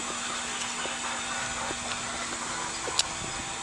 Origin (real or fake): real